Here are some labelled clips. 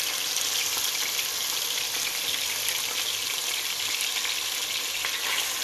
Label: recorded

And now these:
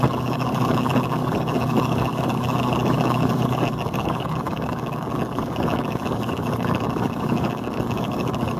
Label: remade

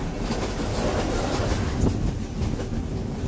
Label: recorded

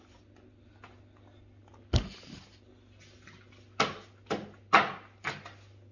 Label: recorded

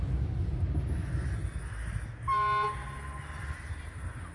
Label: recorded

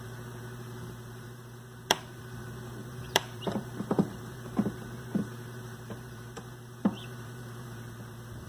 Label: remade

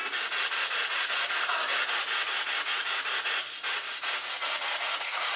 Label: remade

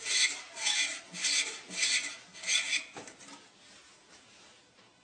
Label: recorded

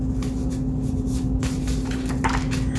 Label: recorded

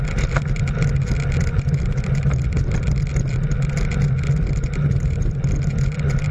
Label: recorded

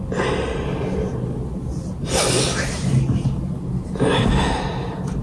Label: recorded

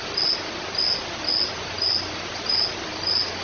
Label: recorded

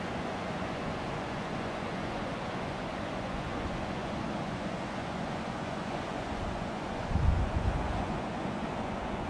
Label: remade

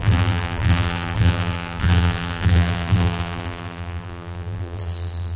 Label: remade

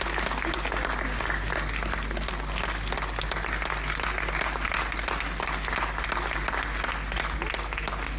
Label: recorded